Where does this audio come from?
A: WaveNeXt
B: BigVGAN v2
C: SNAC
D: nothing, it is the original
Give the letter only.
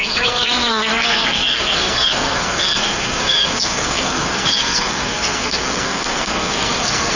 C